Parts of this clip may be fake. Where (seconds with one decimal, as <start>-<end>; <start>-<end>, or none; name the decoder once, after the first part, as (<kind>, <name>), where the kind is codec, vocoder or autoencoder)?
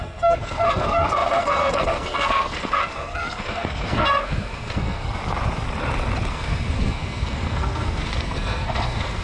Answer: 0.0-5.2 (codec, SNAC); 6.3-9.2